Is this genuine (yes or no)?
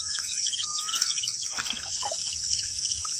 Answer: no